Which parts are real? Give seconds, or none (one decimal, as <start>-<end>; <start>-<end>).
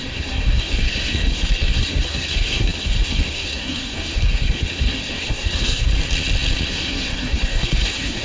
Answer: 5.9-6.7